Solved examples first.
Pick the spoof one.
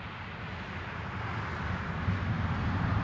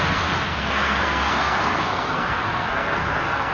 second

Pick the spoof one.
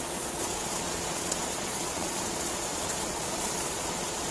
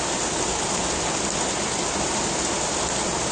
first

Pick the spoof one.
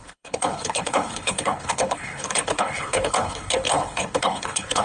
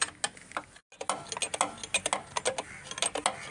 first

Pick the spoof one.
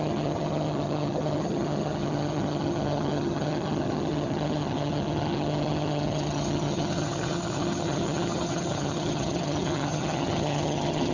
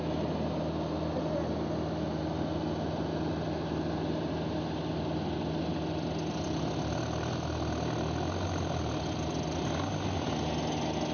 first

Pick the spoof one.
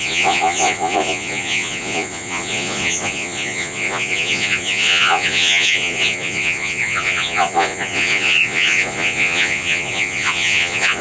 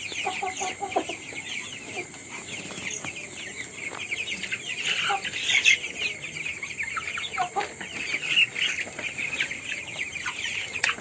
first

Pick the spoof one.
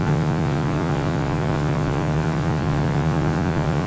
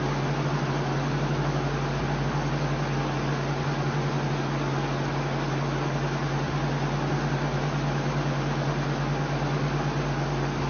first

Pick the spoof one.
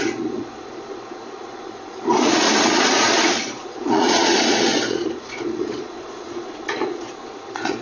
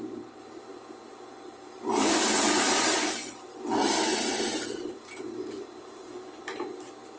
first